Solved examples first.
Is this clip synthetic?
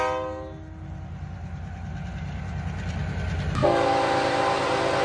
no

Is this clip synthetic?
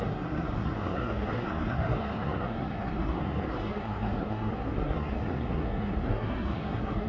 yes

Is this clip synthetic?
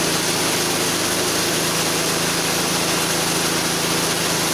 no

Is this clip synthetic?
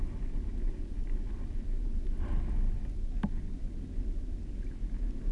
no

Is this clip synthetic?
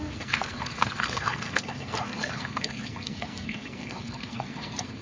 yes